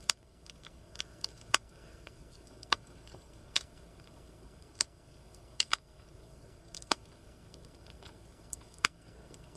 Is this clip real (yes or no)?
no